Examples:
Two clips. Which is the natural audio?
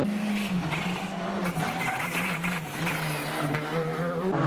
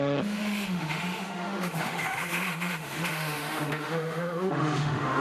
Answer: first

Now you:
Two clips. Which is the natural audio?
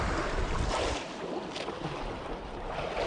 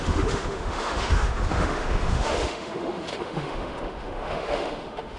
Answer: first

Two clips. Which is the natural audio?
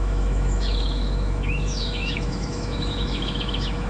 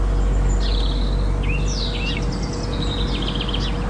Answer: second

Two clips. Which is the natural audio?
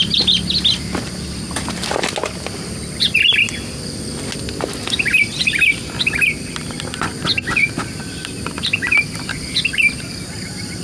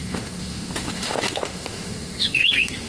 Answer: first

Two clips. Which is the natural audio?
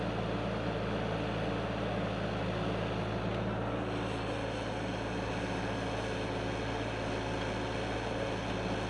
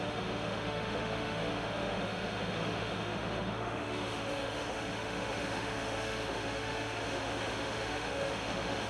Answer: first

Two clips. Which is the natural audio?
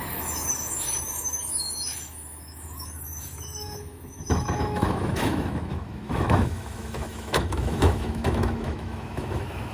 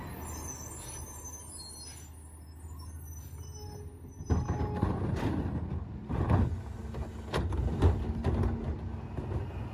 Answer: second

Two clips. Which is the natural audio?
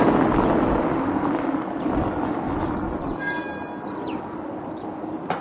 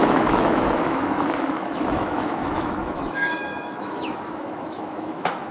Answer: first